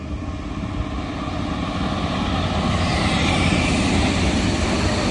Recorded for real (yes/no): yes